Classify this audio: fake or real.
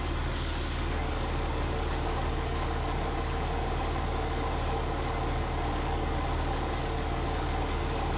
fake